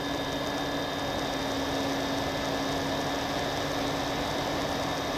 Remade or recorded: recorded